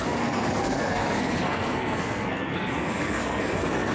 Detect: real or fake fake